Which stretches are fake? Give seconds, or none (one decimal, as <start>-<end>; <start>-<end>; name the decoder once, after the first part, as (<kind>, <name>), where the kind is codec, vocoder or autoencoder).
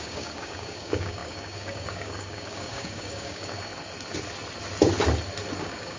0.0-3.7 (codec, DAC); 5.6-6.0